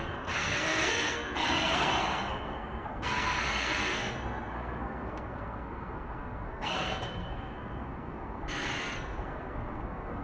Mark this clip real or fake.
fake